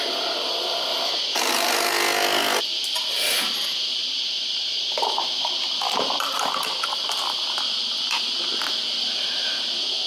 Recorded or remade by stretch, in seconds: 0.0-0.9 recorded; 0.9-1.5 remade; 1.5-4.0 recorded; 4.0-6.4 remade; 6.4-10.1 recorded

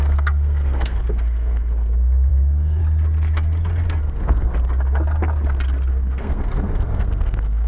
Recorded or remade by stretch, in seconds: 0.0-2.8 remade; 2.8-4.0 recorded; 4.0-4.5 remade; 4.5-5.9 recorded; 5.9-7.7 remade

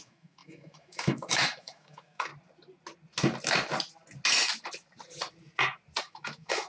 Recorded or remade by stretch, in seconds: 0.0-2.3 remade; 2.3-6.0 recorded; 6.0-6.7 remade